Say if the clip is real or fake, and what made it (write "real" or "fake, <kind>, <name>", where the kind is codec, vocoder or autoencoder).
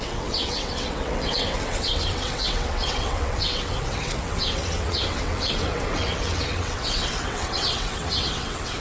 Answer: fake, vocoder, WaveNeXt